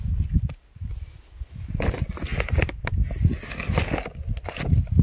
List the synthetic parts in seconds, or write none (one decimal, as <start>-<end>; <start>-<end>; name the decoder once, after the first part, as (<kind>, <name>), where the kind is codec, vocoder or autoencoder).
none